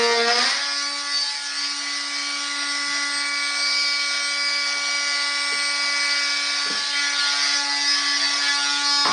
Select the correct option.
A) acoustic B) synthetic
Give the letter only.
A